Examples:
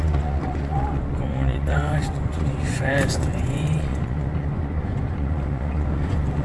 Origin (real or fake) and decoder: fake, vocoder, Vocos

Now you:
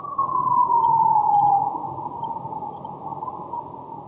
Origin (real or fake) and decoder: real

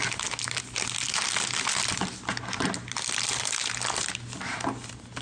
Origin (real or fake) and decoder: real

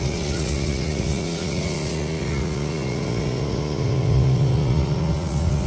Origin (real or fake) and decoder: fake, vocoder, Vocos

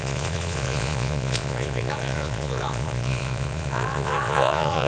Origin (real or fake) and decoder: fake, vocoder, Vocos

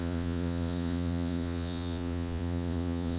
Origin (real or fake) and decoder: fake, vocoder, Vocos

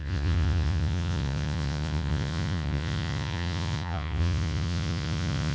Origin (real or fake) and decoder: fake, vocoder, Vocos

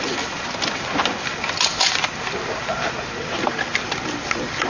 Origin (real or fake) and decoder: real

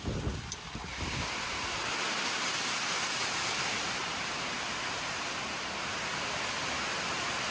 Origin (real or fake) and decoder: real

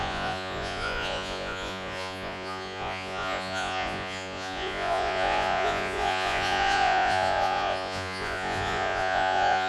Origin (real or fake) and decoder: fake, vocoder, Vocos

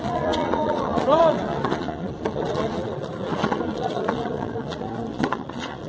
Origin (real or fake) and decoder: fake, vocoder, Vocos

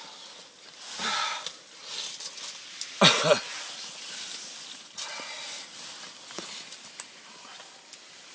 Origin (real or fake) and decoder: real